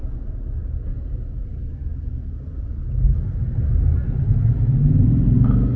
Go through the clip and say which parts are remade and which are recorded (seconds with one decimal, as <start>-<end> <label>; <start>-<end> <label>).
0.0-5.8 recorded